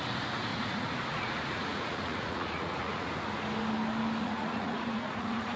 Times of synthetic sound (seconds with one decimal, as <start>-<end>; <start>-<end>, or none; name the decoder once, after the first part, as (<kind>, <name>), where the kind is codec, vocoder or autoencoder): 0.5-3.1 (vocoder, Vocos); 4.2-5.6